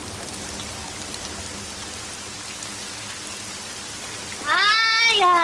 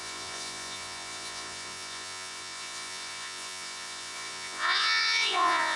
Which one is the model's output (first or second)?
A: second